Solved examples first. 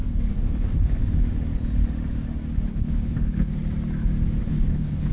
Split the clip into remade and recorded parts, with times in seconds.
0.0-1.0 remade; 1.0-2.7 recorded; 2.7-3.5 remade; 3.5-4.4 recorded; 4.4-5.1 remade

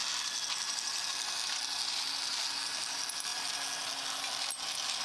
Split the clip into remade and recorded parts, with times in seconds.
0.0-5.0 recorded